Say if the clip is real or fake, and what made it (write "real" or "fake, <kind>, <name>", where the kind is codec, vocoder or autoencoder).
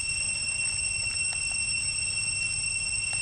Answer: real